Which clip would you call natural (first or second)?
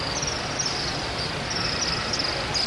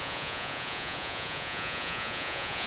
first